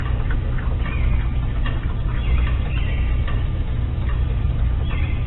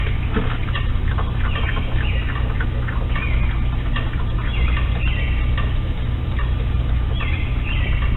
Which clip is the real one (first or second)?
second